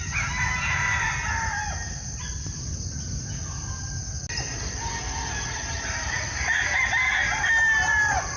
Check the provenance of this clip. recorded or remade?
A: recorded